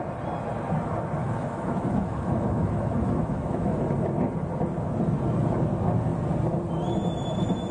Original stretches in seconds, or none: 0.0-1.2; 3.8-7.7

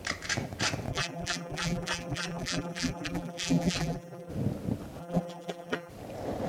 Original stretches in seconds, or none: 0.0-0.9; 4.3-5.0; 5.9-6.5

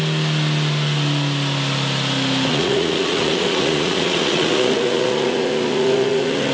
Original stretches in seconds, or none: 0.0-2.5

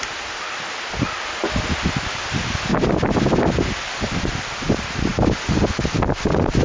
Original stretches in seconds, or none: 0.0-6.6

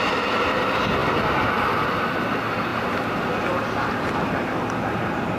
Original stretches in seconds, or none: 0.0-5.4